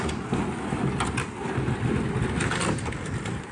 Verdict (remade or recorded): recorded